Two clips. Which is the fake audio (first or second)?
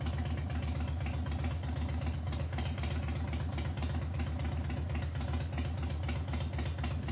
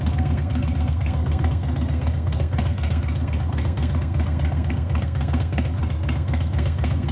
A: second